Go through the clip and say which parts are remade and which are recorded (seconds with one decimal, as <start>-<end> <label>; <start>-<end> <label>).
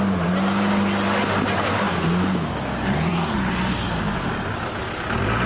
0.0-5.5 recorded